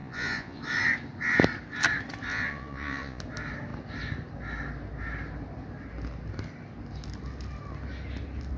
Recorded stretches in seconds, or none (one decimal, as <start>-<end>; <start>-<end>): 0.6-2.3; 3.2-8.6